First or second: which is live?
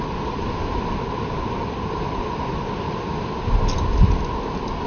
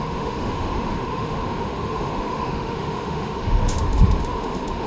first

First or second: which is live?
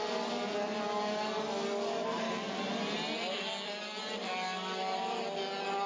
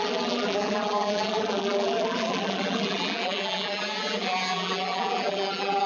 first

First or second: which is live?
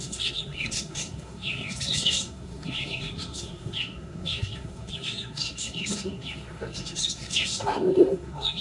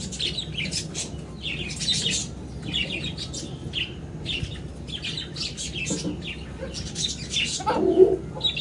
second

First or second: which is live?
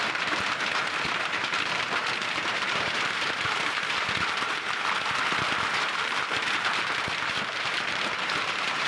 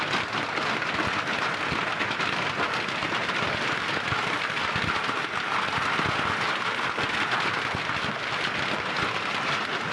second